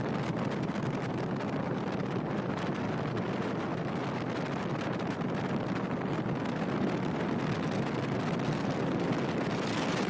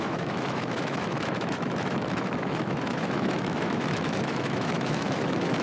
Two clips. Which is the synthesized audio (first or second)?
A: second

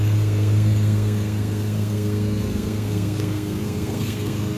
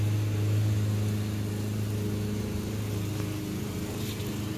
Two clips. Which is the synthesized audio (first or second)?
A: first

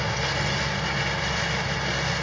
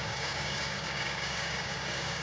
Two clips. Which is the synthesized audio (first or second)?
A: second